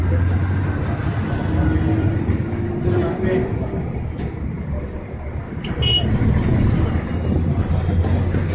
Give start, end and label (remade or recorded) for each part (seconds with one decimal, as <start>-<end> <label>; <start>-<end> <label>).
0.0-8.5 recorded